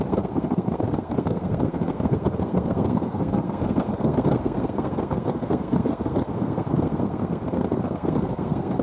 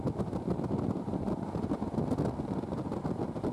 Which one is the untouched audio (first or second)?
second